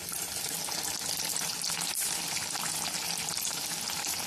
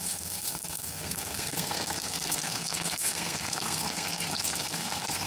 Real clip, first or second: first